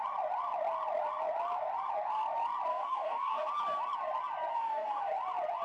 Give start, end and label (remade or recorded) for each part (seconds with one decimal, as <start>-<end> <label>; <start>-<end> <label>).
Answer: 0.0-2.7 recorded; 2.7-3.5 remade; 3.5-4.5 recorded; 4.5-5.0 remade; 5.0-5.6 recorded